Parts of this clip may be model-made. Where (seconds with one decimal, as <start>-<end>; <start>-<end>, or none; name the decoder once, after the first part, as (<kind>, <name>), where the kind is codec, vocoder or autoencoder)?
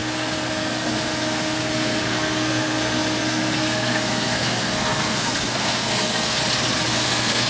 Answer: 0.0-6.4 (codec, SNAC); 6.9-7.5